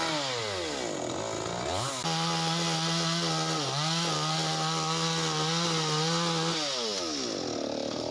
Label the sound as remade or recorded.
recorded